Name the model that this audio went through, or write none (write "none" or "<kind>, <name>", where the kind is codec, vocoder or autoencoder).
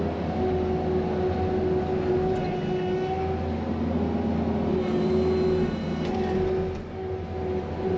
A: none